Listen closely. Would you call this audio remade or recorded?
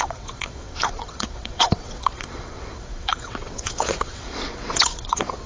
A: remade